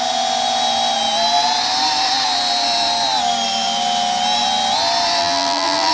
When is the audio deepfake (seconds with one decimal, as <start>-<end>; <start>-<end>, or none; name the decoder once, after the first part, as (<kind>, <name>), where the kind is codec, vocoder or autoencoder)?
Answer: 5.2-5.9 (vocoder, BigVGAN v2)